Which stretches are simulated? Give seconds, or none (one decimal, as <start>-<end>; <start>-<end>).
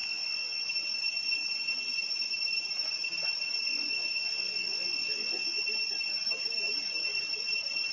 0.0-0.6; 3.7-5.6